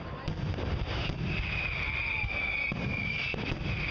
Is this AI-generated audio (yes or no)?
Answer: no